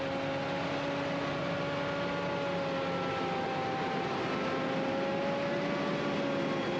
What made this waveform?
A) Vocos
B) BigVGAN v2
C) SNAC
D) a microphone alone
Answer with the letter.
D